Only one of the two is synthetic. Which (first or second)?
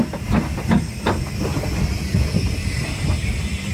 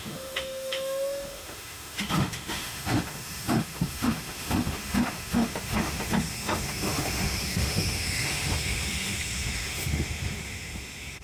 second